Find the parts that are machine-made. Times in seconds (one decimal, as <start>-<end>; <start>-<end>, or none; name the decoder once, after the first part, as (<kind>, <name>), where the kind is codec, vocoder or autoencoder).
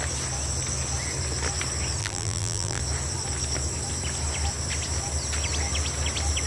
2.0-2.8 (vocoder, BigVGAN v2)